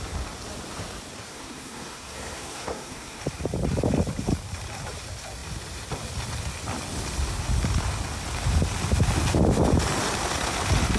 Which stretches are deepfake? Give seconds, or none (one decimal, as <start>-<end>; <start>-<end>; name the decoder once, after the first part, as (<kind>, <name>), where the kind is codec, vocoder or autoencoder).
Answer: 1.3-3.2 (codec, SNAC)